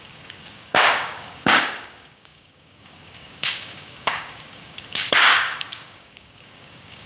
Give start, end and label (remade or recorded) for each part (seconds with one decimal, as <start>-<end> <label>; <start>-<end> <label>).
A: 0.0-7.1 remade